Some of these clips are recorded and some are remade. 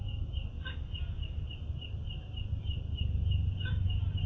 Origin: recorded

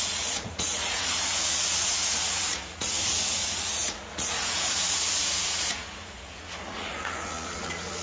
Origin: remade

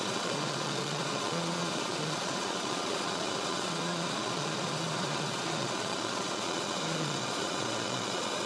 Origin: remade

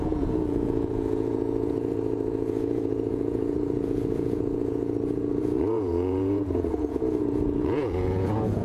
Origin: remade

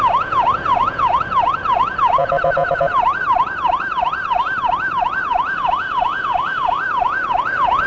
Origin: remade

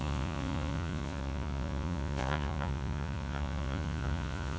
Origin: remade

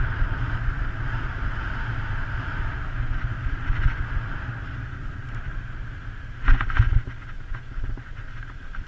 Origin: recorded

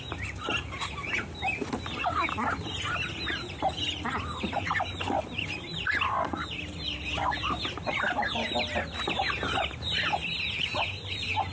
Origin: recorded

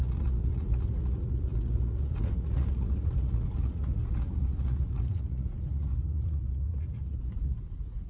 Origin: remade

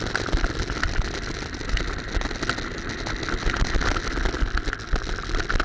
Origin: recorded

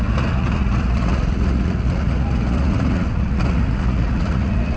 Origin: remade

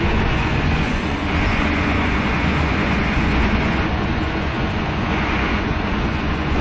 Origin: remade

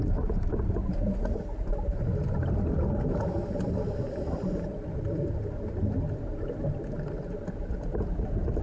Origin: recorded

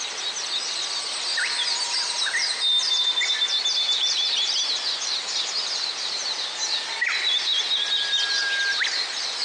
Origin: recorded